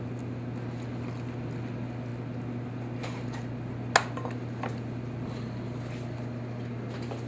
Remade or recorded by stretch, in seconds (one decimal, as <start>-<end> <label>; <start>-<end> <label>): 0.0-7.3 recorded